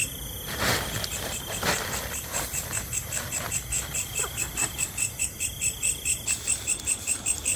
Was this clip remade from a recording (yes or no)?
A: yes